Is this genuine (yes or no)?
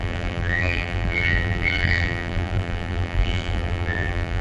no